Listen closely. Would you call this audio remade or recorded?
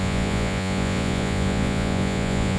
remade